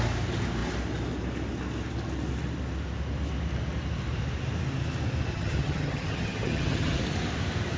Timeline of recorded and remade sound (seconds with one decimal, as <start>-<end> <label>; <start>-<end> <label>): 0.0-5.3 recorded; 5.3-7.0 remade; 7.0-7.8 recorded